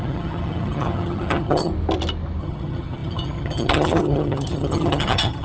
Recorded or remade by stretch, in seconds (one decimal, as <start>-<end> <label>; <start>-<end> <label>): 0.0-1.7 remade; 1.7-2.4 recorded; 2.4-5.4 remade